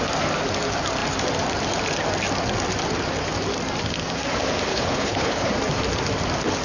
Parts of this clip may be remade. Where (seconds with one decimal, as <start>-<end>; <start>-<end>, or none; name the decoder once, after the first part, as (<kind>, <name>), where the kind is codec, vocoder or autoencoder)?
4.7-5.5 (codec, HILCodec)